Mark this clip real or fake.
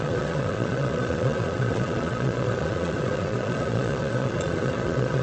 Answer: fake